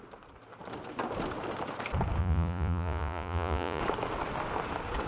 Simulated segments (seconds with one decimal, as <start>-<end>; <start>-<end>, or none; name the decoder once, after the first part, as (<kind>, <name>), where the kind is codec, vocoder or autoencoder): 2.2-3.8 (vocoder, Vocos)